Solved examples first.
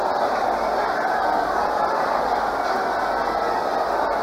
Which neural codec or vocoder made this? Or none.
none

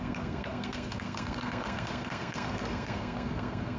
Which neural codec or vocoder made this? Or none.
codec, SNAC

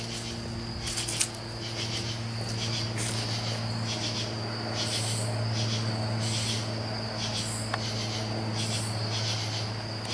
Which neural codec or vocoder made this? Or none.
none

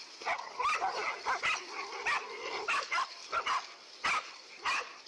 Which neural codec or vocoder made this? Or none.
none